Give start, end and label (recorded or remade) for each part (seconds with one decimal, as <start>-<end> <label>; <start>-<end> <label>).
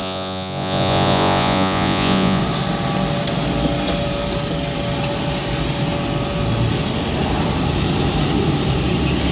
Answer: 0.0-2.4 remade; 2.4-9.3 recorded